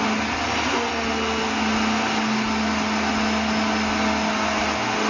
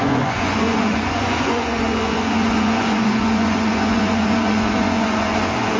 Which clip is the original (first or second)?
first